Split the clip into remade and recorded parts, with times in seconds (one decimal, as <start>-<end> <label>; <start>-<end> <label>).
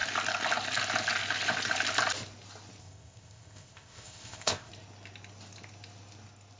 0.0-2.8 recorded; 2.8-4.7 remade; 4.7-6.6 recorded